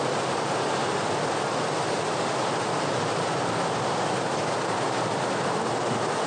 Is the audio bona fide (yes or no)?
yes